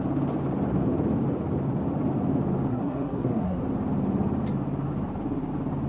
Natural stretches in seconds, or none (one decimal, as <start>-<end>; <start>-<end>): 0.0-2.7; 3.6-5.9